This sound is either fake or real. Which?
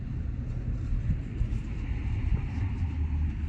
real